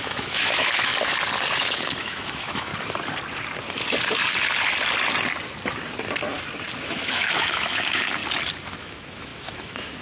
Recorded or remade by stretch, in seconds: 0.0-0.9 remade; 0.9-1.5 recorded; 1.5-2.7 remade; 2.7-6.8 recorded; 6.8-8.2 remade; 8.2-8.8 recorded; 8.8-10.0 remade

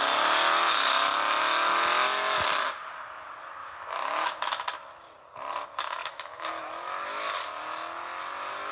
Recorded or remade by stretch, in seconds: 0.0-3.6 recorded; 3.6-4.6 remade; 4.6-6.0 recorded; 6.0-6.5 remade; 6.5-8.7 recorded

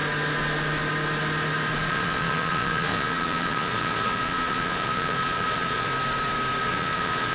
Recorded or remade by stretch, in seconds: 0.0-1.9 recorded; 1.9-5.9 remade; 5.9-6.6 recorded; 6.6-7.3 remade

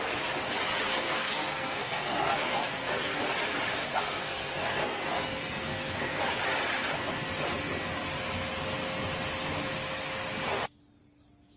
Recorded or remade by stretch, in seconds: 0.0-0.9 recorded; 0.9-3.2 remade; 3.2-3.8 recorded; 3.8-6.2 remade; 6.2-11.6 recorded

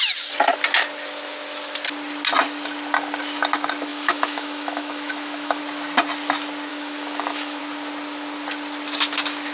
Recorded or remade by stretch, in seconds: 0.0-3.9 recorded; 3.9-5.6 remade; 5.6-6.7 recorded; 6.7-7.6 remade; 7.6-9.5 recorded